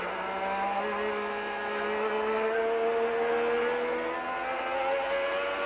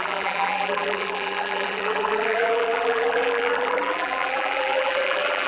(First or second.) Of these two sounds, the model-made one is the second